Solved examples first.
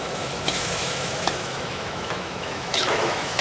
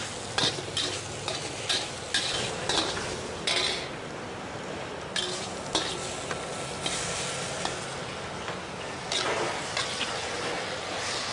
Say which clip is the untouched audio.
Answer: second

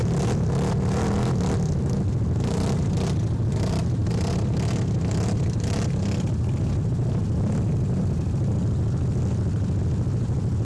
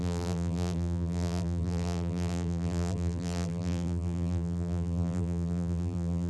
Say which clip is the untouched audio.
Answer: first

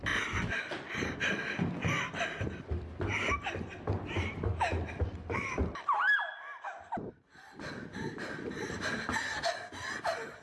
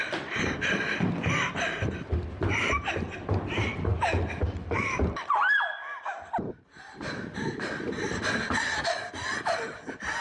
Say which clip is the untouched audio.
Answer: first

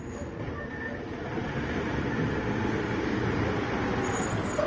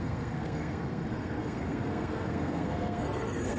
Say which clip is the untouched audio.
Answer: first